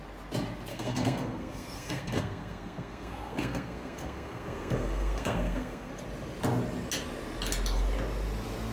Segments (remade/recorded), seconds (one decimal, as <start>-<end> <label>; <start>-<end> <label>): 0.0-0.7 recorded; 0.7-5.9 remade; 5.9-8.7 recorded